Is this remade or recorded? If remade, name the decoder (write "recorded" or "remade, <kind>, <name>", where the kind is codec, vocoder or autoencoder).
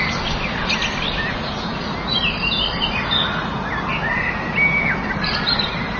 recorded